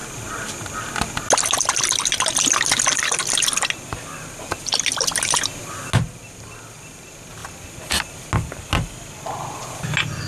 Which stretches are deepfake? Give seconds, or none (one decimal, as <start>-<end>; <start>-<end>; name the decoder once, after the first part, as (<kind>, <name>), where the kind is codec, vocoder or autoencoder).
none